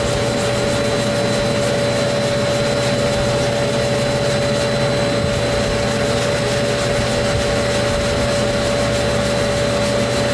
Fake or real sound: real